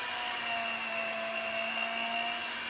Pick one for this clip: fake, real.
real